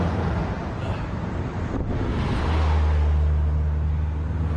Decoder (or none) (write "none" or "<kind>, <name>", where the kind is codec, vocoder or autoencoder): none